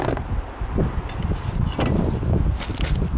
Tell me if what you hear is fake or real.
real